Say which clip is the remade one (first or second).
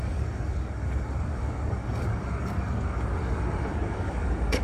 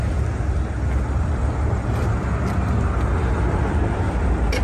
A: first